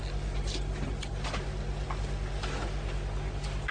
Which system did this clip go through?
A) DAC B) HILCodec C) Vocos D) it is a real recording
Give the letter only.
D